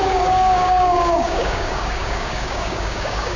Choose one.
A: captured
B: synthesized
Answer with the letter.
B